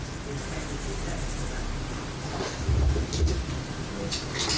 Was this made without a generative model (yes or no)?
yes